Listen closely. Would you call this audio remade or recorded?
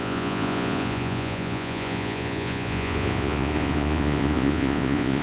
remade